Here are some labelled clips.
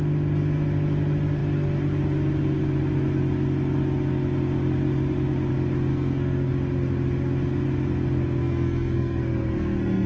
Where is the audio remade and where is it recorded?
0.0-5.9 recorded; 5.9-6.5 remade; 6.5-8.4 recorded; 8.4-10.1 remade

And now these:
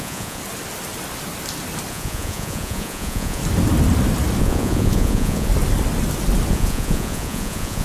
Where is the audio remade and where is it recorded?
0.0-0.4 remade; 0.4-1.9 recorded; 1.9-3.4 remade; 3.4-4.4 recorded; 4.4-5.5 remade; 5.5-6.5 recorded; 6.5-7.8 remade

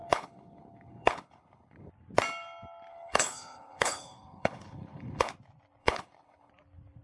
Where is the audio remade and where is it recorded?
0.0-1.9 remade; 1.9-2.9 recorded; 2.9-5.3 remade; 5.3-5.8 recorded; 5.8-6.5 remade; 6.5-7.0 recorded

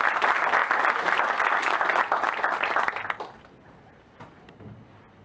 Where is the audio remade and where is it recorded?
0.0-5.2 recorded

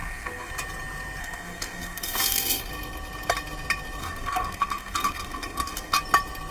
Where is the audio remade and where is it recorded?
0.0-0.5 remade; 0.5-1.2 recorded; 1.2-2.7 remade; 2.7-4.0 recorded; 4.0-6.0 remade; 6.0-6.5 recorded

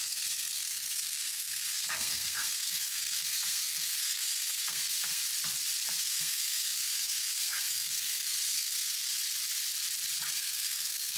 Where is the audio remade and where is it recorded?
0.0-5.2 remade; 5.2-5.9 recorded; 5.9-9.1 remade; 9.1-10.3 recorded; 10.3-11.2 remade

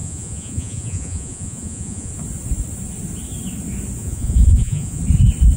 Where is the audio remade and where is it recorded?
0.0-2.1 remade; 2.1-4.0 recorded; 4.0-5.0 remade; 5.0-5.6 recorded